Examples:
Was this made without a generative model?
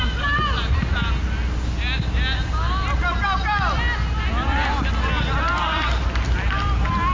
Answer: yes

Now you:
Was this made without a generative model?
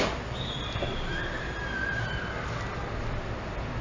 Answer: yes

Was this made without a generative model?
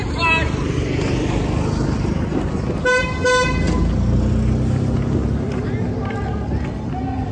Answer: yes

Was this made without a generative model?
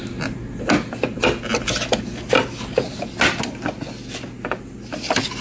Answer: yes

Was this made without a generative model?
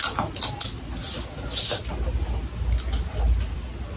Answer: yes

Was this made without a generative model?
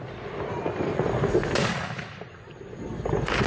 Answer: yes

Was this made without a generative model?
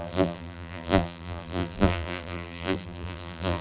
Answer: no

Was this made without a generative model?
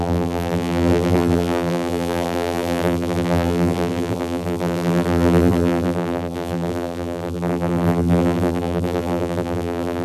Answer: no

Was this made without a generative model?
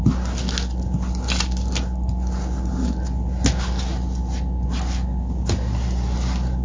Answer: yes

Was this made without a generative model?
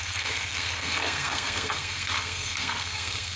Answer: no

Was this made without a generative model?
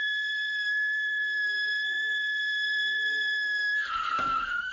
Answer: no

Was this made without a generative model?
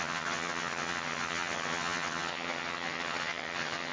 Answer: no